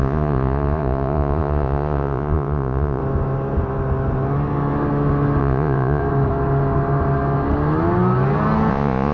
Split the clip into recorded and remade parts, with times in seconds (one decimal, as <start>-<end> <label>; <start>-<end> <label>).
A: 0.0-3.0 remade; 3.0-5.4 recorded; 5.4-6.0 remade; 6.0-8.7 recorded; 8.7-9.1 remade